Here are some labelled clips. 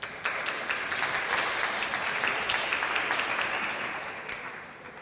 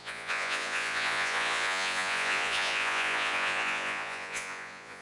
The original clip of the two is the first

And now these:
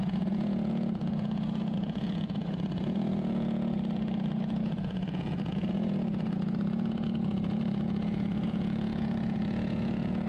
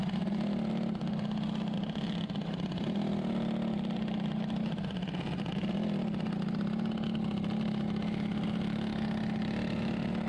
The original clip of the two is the second